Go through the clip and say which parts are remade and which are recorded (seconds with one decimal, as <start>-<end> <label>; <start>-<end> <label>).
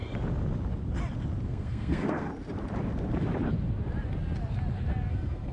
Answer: 0.0-1.5 recorded; 1.5-2.3 remade; 2.3-5.1 recorded; 5.1-5.5 remade